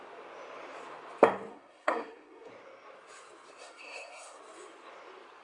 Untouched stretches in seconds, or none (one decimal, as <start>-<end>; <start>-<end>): 0.0-1.5; 2.5-3.6; 4.4-5.4

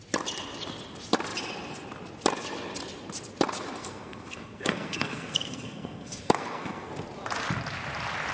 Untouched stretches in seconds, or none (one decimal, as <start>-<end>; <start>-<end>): 0.0-3.8; 6.9-8.3

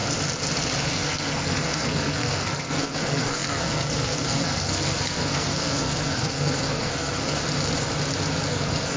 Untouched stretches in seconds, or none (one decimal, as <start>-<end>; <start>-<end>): 0.0-0.9; 7.4-8.5

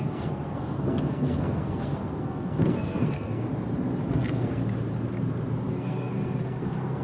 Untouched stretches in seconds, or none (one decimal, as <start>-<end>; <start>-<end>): 3.5-4.1; 4.6-5.7

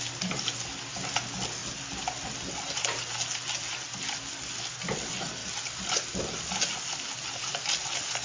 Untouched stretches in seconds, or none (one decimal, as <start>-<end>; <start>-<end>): 0.0-8.2

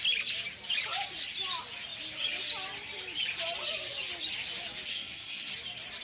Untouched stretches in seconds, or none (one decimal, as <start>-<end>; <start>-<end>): 0.0-4.9; 5.5-6.0

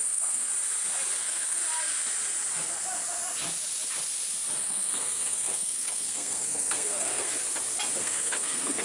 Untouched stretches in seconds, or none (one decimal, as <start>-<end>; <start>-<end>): 0.5-1.2; 1.6-4.6; 7.3-8.0